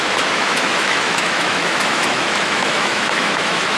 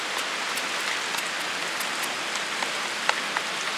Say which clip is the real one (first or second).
second